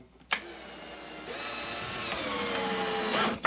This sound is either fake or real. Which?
real